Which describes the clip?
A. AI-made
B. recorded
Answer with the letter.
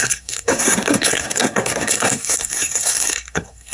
A